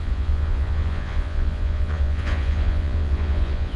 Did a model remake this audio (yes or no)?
yes